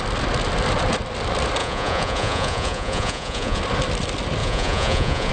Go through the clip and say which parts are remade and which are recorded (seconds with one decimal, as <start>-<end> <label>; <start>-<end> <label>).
0.0-1.6 recorded; 1.6-3.6 remade; 3.6-4.4 recorded; 4.4-5.3 remade